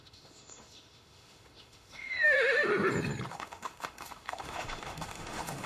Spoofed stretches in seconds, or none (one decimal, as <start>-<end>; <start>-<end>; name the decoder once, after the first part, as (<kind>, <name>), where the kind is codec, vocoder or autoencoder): 0.0-2.7 (autoencoder, DAC-VAE); 3.3-5.7